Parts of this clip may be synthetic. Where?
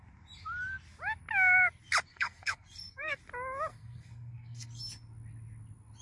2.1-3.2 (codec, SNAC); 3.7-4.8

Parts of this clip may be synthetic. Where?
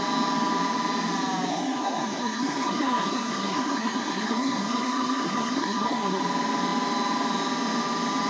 1.5-6.2 (codec, SNAC)